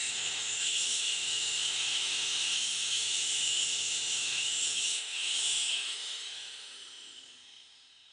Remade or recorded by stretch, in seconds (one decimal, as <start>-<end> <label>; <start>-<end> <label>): 0.0-8.1 remade